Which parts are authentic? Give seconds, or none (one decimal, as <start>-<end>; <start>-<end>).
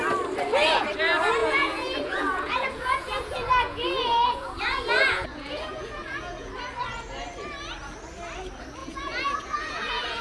0.0-1.4; 6.5-8.8